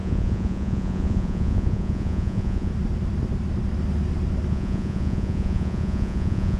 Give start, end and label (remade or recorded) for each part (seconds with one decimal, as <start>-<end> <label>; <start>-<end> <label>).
0.0-2.7 remade; 2.7-4.5 recorded; 4.5-6.6 remade